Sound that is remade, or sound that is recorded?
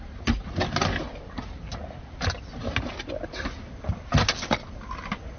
recorded